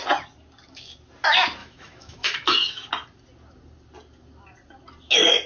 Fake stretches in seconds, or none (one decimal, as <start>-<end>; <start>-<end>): 1.6-2.9